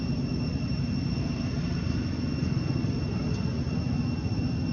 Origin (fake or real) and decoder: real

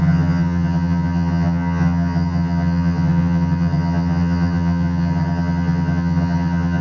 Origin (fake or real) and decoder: fake, vocoder, HiFi-GAN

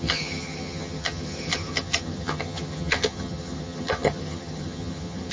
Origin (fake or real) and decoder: fake, vocoder, HiFi-GAN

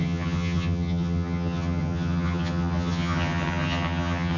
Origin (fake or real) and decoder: fake, vocoder, HiFi-GAN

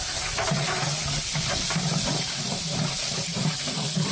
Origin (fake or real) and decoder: real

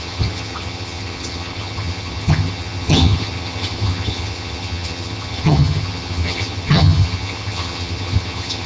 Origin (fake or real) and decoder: fake, vocoder, HiFi-GAN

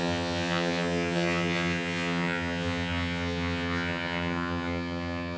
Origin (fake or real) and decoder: fake, vocoder, HiFi-GAN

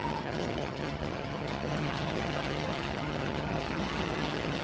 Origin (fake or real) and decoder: fake, vocoder, HiFi-GAN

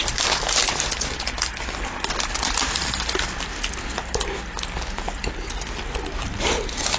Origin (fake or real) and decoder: real